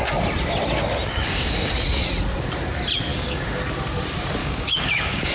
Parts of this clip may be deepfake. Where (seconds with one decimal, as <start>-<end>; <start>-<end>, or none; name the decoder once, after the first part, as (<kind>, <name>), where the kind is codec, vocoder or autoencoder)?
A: 1.2-1.7 (codec, DAC); 3.1-3.6; 4.4-5.3

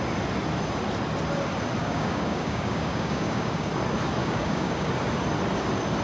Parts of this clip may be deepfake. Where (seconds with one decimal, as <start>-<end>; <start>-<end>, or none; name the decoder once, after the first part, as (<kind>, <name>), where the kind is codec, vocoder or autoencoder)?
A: 1.8-3.7 (codec, DAC); 4.2-4.9

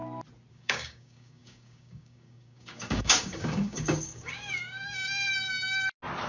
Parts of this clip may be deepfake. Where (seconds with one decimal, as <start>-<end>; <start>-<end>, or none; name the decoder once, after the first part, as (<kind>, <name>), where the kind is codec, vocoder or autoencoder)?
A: 0.5-5.3 (codec, DAC)

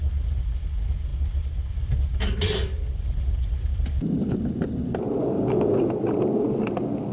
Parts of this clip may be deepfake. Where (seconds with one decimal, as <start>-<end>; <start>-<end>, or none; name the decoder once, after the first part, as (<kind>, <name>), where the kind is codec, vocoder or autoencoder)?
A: 5.2-5.9 (codec, DAC)

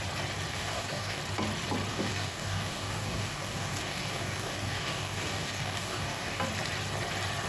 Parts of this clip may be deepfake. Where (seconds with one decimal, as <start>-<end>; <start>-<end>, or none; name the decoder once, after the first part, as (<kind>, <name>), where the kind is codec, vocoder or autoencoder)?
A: 0.5-1.2 (codec, DAC); 1.9-6.4

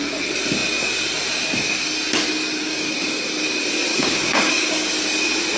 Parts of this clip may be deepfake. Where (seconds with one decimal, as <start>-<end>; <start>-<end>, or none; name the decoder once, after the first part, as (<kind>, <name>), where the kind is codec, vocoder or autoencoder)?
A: 2.6-3.2 (codec, DAC); 3.9-4.9

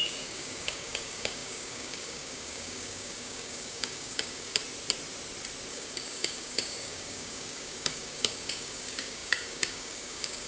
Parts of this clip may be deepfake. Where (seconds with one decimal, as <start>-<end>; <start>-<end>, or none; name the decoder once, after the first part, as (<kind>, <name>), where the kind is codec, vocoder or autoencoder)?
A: 0.0-4.6 (codec, DAC); 5.7-10.5